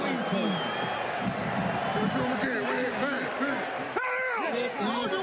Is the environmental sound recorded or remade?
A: recorded